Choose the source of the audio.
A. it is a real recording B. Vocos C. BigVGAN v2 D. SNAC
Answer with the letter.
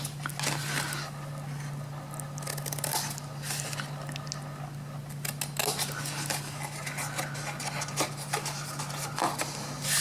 A